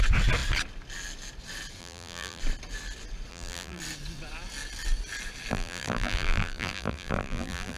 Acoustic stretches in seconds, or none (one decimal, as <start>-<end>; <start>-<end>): 0.0-1.8; 2.4-3.3; 3.8-5.5